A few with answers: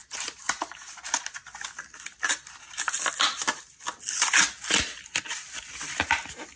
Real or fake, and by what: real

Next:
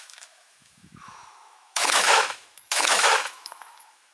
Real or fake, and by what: fake, autoencoder, DAC-VAE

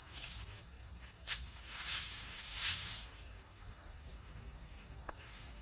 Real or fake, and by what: fake, codec, DAC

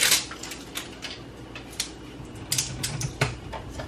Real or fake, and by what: real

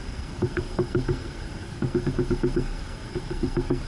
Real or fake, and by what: fake, codec, SNAC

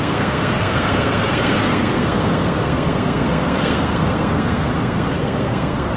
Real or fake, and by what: fake, codec, SNAC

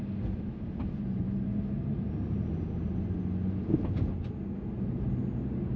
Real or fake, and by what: real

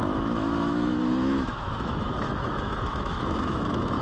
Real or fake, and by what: fake, autoencoder, DAC-VAE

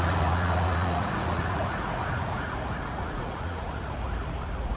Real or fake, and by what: fake, vocoder, Vocos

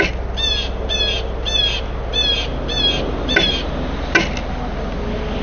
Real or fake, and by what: real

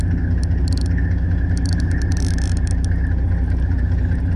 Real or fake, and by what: real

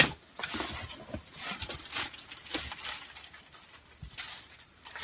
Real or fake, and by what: real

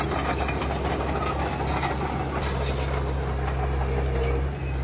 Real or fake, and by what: real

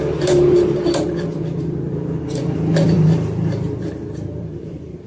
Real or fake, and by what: fake, vocoder, BigVGAN v2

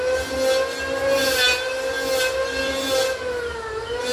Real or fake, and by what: real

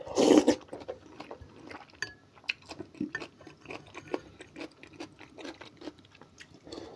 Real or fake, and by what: real